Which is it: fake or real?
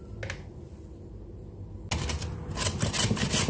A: real